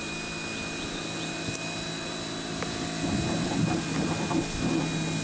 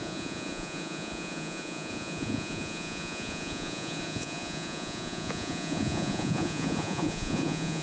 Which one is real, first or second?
first